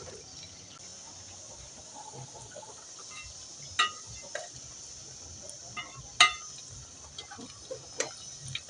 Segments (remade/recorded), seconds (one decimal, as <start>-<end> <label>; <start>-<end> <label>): 0.0-8.7 recorded